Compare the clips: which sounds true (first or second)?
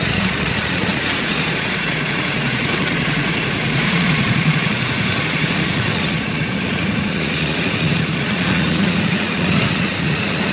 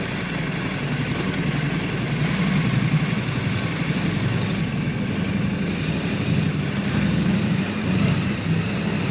second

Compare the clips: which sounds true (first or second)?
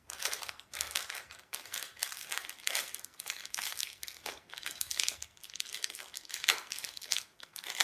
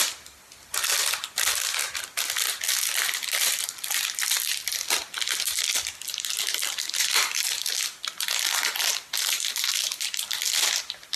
second